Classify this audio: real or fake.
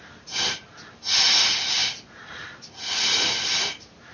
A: real